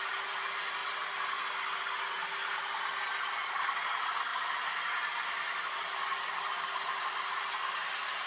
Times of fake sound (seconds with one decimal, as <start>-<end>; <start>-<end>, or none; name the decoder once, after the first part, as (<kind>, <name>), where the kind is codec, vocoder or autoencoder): none

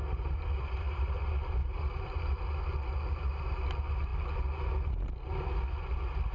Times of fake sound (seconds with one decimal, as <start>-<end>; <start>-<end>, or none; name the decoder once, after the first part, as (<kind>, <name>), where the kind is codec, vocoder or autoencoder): 0.0-1.2 (vocoder, BigVGAN v2); 1.6-2.6

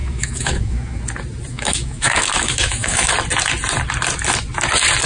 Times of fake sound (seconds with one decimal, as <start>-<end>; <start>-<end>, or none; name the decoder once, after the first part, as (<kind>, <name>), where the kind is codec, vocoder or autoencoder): 0.0-1.0 (autoencoder, DAC-VAE); 1.5-3.1

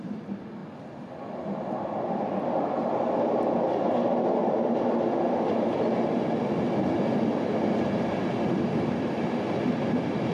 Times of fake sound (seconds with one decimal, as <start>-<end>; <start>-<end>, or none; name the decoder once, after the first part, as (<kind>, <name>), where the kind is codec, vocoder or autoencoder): 4.4-5.8 (vocoder, BigVGAN v2); 8.1-9.5